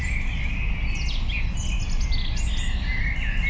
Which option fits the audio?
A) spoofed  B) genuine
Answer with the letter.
B